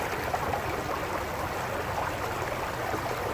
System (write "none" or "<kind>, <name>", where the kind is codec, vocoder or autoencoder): none